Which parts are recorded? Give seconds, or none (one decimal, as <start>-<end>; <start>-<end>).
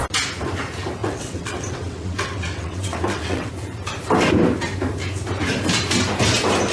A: 0.0-1.0; 3.5-6.7